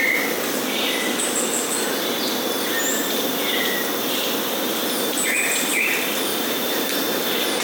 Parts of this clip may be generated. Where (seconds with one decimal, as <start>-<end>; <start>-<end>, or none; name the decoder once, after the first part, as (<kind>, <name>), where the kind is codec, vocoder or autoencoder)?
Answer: 0.0-1.9 (vocoder, BigVGAN v2); 5.0-6.3